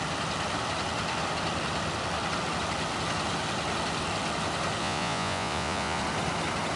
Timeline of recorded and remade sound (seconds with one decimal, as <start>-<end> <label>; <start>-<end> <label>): 0.0-4.8 recorded; 4.8-6.0 remade; 6.0-6.8 recorded